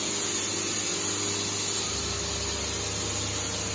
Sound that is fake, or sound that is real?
real